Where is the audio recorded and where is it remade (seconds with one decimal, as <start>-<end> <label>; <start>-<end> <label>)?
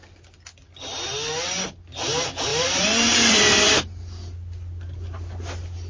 0.0-1.1 recorded; 1.1-1.7 remade; 1.7-2.5 recorded; 2.5-3.8 remade; 3.8-5.9 recorded